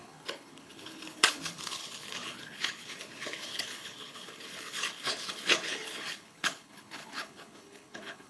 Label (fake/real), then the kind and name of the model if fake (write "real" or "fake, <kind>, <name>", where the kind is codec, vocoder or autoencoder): fake, codec, HILCodec